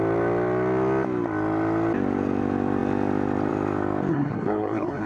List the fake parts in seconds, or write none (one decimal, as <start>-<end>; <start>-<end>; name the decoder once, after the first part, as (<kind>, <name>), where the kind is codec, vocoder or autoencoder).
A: 4.1-5.1 (codec, SNAC)